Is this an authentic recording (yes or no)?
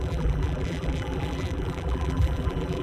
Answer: no